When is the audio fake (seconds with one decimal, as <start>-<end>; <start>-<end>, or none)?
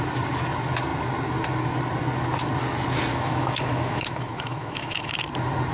3.1-5.1